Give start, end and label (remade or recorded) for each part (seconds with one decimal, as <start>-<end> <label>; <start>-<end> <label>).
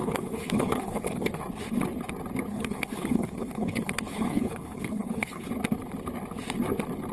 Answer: 0.0-1.3 remade; 1.3-2.5 recorded; 2.5-5.5 remade; 5.5-7.1 recorded